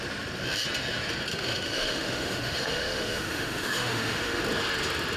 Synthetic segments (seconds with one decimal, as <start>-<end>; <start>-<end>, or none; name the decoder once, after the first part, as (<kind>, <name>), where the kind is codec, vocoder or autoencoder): 1.3-4.4 (autoencoder, DAC-VAE)